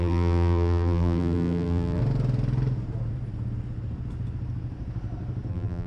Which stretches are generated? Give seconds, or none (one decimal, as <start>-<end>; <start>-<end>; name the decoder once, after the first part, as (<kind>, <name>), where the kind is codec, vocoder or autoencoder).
0.0-2.0 (vocoder, BigVGAN v2); 5.5-5.9